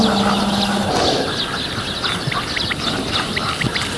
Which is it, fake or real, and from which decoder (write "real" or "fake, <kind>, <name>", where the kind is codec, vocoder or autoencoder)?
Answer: real